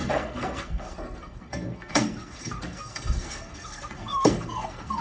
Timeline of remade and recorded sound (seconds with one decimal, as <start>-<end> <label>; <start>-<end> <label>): 0.0-5.0 remade